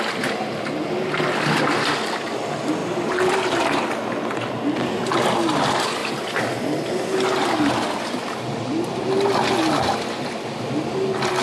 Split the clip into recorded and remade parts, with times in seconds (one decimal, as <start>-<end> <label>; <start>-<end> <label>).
0.0-11.4 recorded